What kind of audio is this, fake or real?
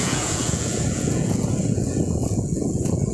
fake